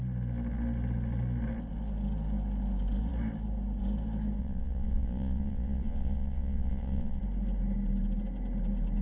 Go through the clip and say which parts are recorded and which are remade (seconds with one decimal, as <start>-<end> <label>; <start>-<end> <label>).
0.0-4.4 recorded; 4.4-7.2 remade; 7.2-9.0 recorded